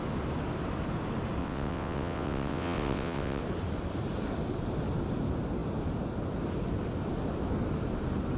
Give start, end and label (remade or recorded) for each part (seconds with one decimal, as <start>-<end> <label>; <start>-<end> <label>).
0.0-1.4 recorded; 1.4-3.4 remade; 3.4-8.4 recorded